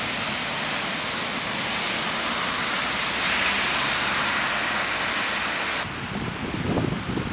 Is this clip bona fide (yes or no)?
yes